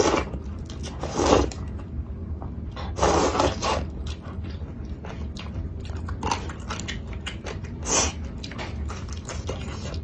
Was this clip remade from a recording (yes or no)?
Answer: no